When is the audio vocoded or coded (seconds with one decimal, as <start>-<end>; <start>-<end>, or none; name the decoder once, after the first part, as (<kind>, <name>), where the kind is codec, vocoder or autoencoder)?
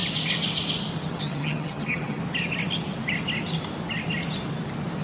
1.1-2.2 (vocoder, HiFi-GAN)